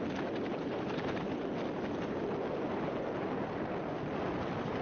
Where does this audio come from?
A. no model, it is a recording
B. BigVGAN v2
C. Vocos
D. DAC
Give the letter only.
A